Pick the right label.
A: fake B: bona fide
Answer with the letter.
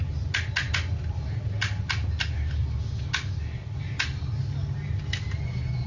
B